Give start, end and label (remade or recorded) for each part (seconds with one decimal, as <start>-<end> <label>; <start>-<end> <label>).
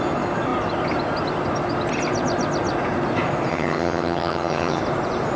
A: 0.0-3.5 recorded; 3.5-4.8 remade; 4.8-5.4 recorded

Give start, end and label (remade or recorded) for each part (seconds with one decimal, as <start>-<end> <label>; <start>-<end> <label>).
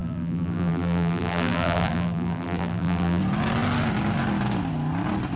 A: 0.0-3.2 remade; 3.2-5.4 recorded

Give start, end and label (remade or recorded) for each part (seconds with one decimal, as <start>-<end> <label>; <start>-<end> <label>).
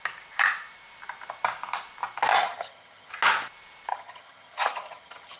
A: 0.0-2.3 recorded; 2.3-3.1 remade; 3.1-3.9 recorded; 3.9-5.4 remade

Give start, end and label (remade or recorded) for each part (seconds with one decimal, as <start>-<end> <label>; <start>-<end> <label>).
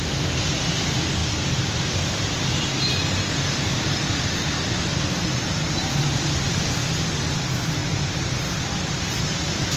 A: 0.0-5.3 recorded; 5.3-6.7 remade; 6.7-9.8 recorded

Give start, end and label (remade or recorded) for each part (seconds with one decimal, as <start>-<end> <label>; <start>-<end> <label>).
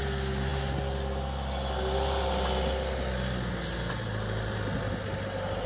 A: 0.0-5.7 recorded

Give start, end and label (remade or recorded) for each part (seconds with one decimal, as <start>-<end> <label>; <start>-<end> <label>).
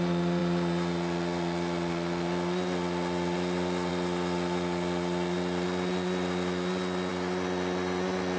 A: 0.0-8.4 recorded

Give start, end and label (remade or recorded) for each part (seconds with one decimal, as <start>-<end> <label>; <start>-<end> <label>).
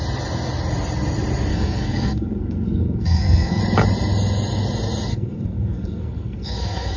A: 0.0-1.5 recorded; 1.5-3.6 remade; 3.6-5.1 recorded; 5.1-7.0 remade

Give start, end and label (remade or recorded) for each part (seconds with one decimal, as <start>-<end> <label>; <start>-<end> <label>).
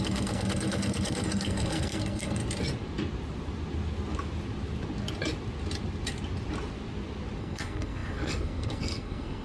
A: 0.0-2.4 remade; 2.4-7.4 recorded; 7.4-9.4 remade